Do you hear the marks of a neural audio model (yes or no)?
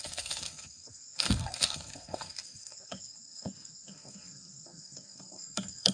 yes